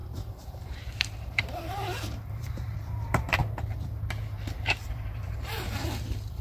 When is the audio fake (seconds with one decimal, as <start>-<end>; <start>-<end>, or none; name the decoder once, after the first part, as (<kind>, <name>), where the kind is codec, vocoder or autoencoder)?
0.0-3.4 (vocoder, BigVGAN v2); 4.1-6.4